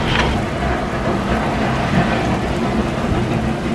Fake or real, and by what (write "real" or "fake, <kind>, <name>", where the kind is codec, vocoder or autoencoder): real